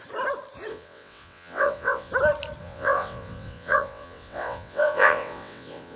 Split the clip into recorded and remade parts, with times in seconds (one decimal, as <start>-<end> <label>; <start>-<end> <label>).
0.0-0.7 recorded; 0.7-2.1 remade; 2.1-2.6 recorded; 2.6-6.0 remade